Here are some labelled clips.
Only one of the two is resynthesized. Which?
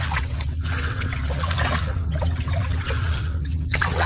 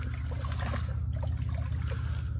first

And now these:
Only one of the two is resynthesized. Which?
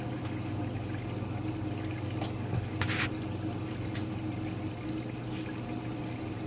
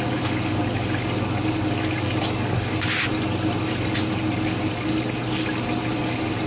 first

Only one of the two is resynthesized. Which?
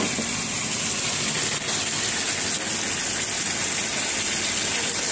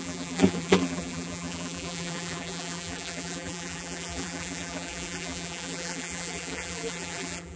second